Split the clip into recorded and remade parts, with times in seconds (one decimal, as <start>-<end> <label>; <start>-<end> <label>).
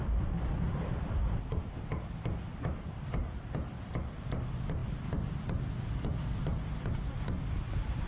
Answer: 0.0-1.2 remade; 1.2-2.0 recorded; 2.0-4.8 remade; 4.8-7.2 recorded; 7.2-8.1 remade